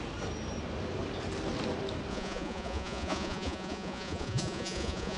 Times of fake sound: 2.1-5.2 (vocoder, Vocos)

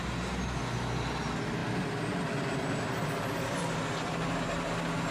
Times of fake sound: none

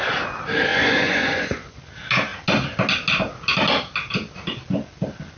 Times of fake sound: 0.7-1.8 (vocoder, Vocos)